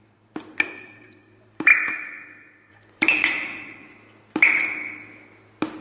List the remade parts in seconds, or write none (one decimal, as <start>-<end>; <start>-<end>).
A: 0.0-1.7; 2.7-3.8